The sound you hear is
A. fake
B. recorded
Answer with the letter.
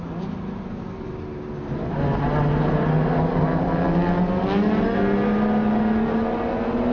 B